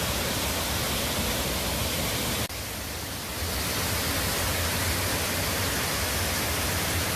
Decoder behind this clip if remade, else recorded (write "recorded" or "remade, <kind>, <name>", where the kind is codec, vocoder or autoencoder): recorded